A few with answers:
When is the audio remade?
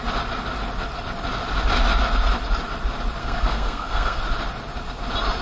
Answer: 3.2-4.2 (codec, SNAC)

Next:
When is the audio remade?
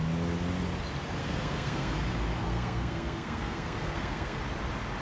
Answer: 1.2-1.9 (codec, SNAC); 2.4-4.4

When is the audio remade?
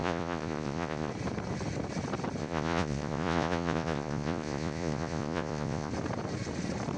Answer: 0.0-1.1 (vocoder, Vocos); 2.4-5.9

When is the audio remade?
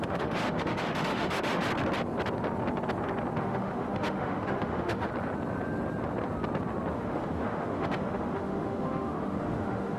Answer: 0.0-1.6 (autoencoder, DAC-VAE); 3.4-5.1; 6.9-10.0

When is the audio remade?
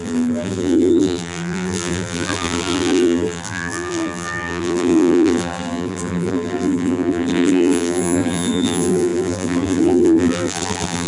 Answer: 0.0-11.1 (vocoder, BigVGAN v2)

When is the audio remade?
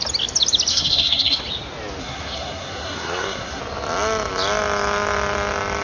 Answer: 0.7-1.4 (codec, SNAC); 2.0-3.6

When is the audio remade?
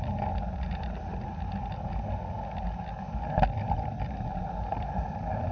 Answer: none